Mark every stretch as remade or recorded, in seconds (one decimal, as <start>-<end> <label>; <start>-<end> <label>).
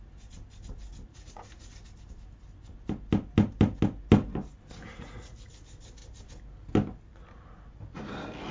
0.0-1.1 recorded; 1.1-1.7 remade; 1.7-4.9 recorded; 4.9-5.5 remade; 5.5-8.5 recorded